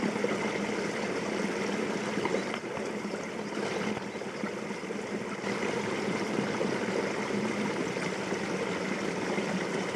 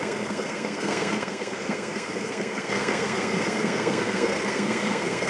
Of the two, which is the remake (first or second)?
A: second